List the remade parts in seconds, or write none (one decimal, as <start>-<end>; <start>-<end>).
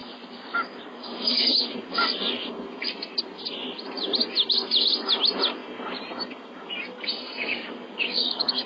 0.0-1.7; 7.4-8.7